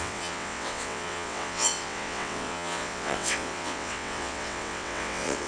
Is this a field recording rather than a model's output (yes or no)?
no